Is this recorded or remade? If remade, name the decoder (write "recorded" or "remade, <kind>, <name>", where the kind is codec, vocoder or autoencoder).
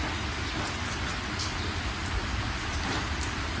recorded